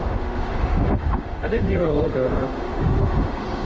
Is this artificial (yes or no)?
yes